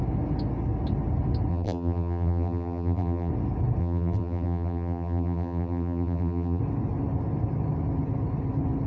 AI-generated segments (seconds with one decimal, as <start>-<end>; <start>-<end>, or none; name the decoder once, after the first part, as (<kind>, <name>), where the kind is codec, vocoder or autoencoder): 1.5-3.3 (vocoder, BigVGAN v2); 3.8-6.6